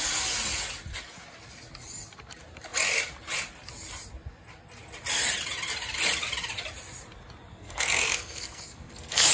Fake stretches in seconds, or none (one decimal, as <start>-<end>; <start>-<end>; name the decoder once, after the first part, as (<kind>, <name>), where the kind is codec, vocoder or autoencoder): 7.5-9.3 (codec, SNAC)